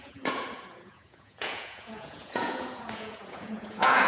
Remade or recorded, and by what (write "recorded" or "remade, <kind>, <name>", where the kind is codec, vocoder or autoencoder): remade, vocoder, Vocos